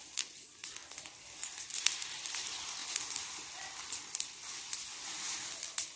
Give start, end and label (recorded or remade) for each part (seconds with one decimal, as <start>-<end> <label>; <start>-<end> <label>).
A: 0.0-6.0 recorded